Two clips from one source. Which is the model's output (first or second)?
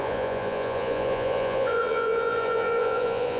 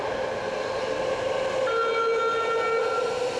first